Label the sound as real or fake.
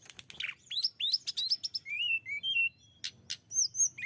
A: real